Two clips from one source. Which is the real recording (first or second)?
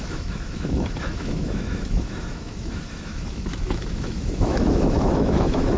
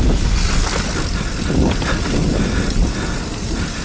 second